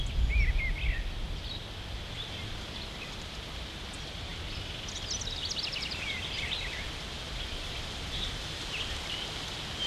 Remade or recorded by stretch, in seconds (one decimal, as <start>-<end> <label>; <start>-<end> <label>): 0.0-9.9 remade